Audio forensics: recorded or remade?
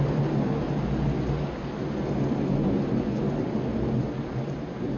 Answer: recorded